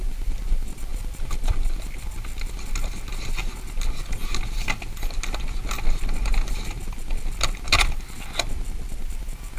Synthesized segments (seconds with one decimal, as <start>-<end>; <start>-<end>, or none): 0.9-2.1